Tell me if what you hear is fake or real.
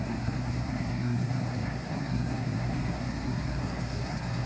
fake